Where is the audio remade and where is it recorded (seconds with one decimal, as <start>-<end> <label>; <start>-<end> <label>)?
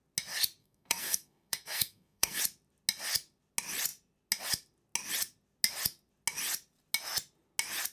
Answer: 0.0-0.6 recorded; 0.6-2.4 remade; 2.4-7.9 recorded